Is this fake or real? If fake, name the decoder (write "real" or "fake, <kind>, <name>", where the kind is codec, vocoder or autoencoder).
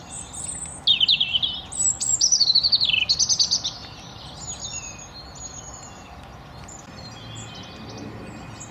real